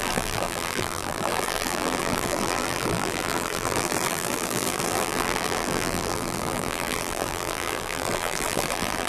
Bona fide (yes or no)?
no